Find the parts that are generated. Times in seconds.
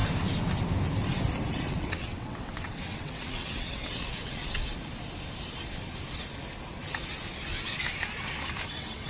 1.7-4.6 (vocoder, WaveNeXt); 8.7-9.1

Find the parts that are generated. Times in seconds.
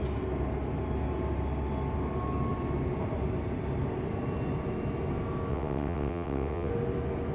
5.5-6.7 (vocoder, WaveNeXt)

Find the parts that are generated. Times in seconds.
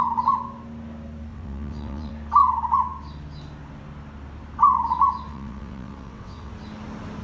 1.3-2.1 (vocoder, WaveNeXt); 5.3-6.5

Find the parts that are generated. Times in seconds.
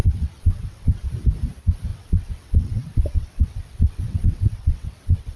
0.0-1.1 (vocoder, WaveNeXt); 1.9-5.4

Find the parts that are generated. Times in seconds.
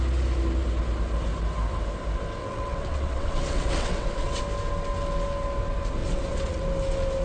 2.4-4.4 (vocoder, WaveNeXt); 6.0-6.6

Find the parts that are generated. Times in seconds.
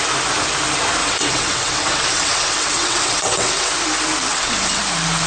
1.0-3.7 (vocoder, WaveNeXt); 4.3-4.8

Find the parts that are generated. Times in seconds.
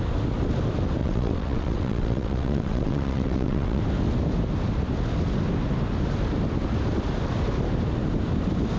1.0-3.8 (vocoder, WaveNeXt)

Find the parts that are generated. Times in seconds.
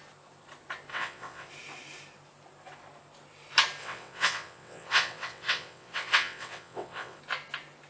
0.9-1.5 (vocoder, WaveNeXt); 3.8-7.2